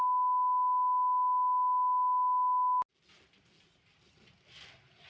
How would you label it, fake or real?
real